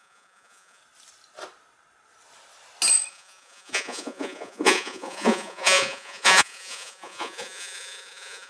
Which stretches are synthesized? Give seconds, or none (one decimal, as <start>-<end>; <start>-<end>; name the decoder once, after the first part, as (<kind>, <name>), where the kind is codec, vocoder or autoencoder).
0.0-0.8 (vocoder, Vocos); 3.1-8.5